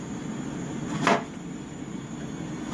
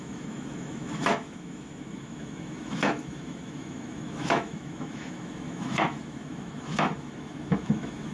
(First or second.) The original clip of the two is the first